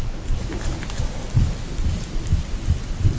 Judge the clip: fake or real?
real